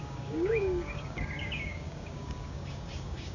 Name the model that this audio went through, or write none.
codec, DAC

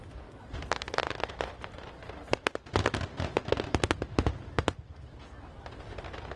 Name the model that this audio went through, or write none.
none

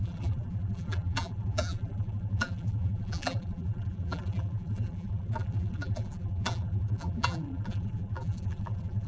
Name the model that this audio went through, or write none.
vocoder, BigVGAN v2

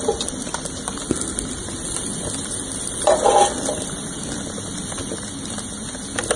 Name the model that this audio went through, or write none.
none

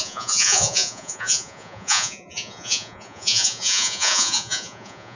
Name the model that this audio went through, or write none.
vocoder, Vocos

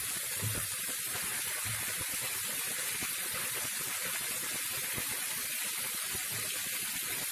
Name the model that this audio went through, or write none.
none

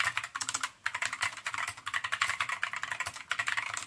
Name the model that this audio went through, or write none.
none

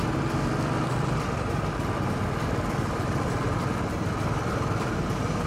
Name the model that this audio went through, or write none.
none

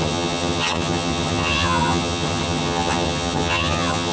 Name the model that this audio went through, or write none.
vocoder, HiFi-GAN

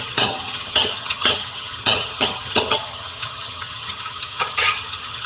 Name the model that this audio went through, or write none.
vocoder, HiFi-GAN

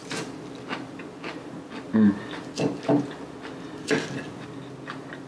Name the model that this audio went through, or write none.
none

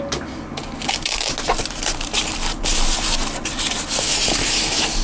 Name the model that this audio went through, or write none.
none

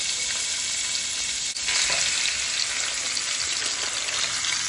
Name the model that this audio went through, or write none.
none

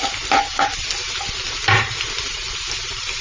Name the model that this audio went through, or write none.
none